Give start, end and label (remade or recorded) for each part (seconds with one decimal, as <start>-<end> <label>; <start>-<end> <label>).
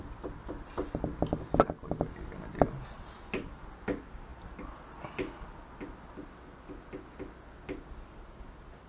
0.0-8.9 recorded